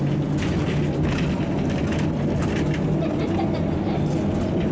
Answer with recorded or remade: recorded